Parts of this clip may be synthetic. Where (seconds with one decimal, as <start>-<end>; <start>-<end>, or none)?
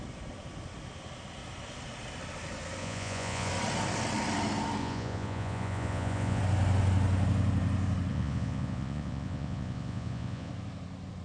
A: 2.8-3.5; 4.8-6.4; 8.1-10.5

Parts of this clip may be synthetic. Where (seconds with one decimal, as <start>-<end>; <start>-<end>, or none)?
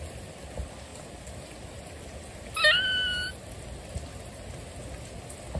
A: none